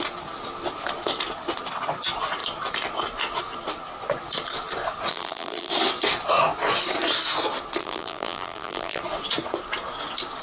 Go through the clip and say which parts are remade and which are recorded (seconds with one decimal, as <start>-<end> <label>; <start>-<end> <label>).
0.0-5.1 recorded; 5.1-5.7 remade; 5.7-7.8 recorded; 7.8-9.0 remade; 9.0-10.4 recorded